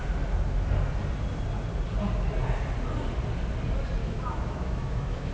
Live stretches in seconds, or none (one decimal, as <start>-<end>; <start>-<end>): 0.0-4.0